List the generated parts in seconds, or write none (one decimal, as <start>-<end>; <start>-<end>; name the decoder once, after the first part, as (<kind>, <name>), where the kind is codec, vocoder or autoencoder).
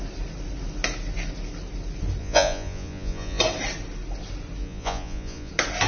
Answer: 2.2-3.4 (vocoder, Vocos); 4.6-5.5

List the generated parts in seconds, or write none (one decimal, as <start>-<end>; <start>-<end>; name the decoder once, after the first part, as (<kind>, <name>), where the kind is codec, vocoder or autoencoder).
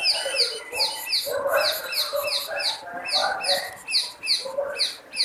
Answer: 1.5-2.7 (vocoder, BigVGAN v2)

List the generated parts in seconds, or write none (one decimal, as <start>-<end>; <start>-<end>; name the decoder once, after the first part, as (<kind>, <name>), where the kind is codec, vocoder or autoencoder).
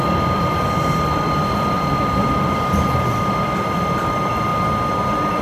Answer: 0.0-4.5 (vocoder, BigVGAN v2)